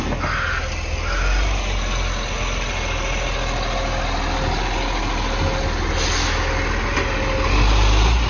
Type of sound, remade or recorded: recorded